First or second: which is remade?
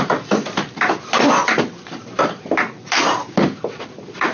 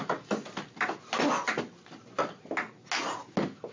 first